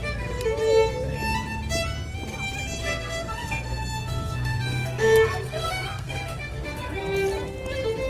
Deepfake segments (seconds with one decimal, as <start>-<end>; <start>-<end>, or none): 2.8-7.0